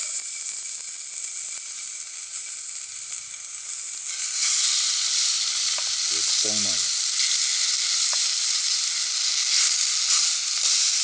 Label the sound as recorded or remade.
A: recorded